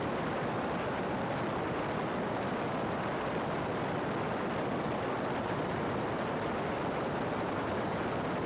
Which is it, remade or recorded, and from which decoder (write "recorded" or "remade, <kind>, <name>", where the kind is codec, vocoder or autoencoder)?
recorded